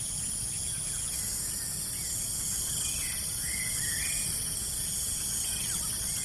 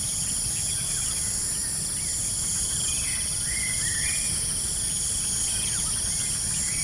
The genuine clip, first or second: first